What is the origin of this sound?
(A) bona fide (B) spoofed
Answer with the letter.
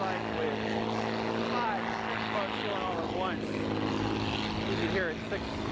A